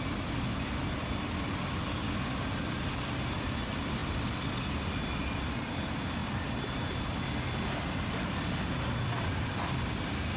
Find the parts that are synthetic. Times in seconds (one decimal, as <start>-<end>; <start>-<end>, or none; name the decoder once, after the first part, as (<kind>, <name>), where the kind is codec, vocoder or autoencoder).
none